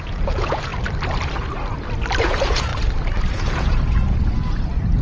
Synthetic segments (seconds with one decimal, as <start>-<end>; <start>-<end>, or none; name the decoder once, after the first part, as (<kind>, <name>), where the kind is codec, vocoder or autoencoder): 0.0-0.7 (vocoder, Vocos); 2.2-2.7; 3.3-5.0